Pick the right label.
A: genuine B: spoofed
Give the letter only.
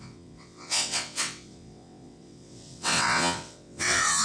B